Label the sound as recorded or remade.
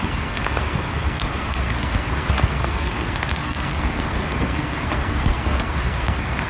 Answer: remade